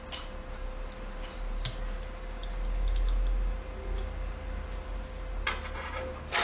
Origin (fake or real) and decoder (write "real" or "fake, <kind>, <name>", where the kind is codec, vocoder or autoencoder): real